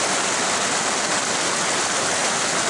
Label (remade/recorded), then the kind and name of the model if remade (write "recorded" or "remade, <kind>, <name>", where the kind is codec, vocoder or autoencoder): recorded